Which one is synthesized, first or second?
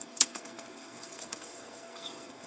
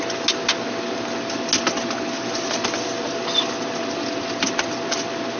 first